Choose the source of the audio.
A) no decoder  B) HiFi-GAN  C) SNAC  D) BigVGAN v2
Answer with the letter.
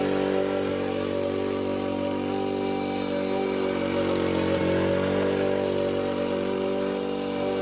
A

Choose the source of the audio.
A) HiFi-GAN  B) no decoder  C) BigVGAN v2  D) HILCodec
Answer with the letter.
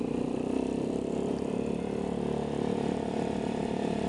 C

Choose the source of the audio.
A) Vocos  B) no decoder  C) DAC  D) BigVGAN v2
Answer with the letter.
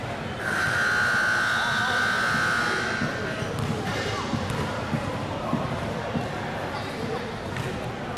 B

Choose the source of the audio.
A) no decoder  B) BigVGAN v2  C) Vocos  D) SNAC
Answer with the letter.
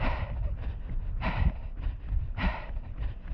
B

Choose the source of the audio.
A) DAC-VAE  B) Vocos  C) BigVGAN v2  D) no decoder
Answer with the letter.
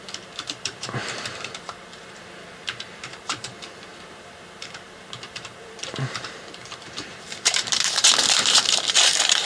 C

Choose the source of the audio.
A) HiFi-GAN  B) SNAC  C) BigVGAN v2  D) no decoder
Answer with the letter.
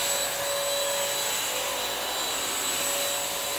D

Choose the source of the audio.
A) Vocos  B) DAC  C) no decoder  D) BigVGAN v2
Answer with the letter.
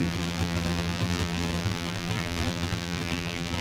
D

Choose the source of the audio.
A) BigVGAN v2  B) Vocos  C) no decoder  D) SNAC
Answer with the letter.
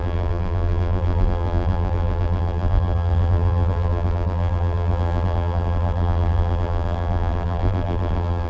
A